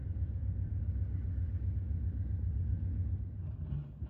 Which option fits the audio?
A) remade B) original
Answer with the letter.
B